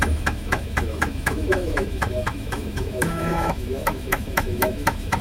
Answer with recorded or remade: remade